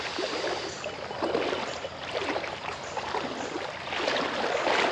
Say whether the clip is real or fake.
real